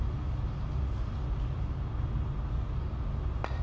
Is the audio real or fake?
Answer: real